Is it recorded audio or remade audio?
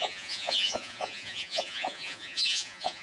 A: remade